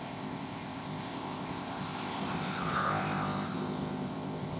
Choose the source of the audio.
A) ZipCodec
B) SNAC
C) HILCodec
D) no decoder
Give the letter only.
A